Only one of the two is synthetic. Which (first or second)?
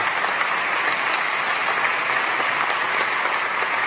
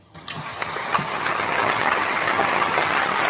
second